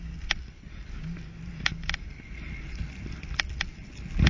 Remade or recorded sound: recorded